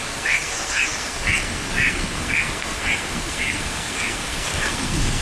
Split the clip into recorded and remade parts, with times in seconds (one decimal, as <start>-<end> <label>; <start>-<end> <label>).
0.0-5.2 remade